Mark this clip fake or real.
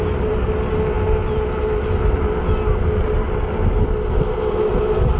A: real